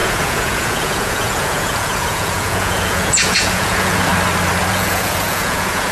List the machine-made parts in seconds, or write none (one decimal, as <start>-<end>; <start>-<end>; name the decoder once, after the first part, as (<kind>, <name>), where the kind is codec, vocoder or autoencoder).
0.0-4.1 (vocoder, Vocos); 4.7-5.9